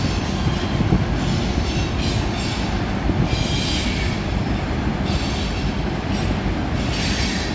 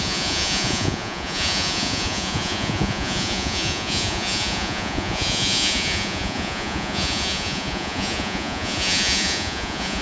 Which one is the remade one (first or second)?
second